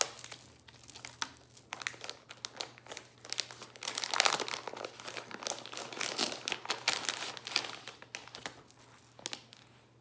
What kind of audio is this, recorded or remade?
recorded